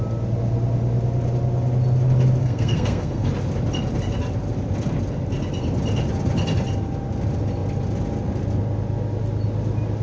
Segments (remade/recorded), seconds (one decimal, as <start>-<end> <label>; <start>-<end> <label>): 0.0-2.4 recorded; 2.4-3.3 remade; 3.3-10.0 recorded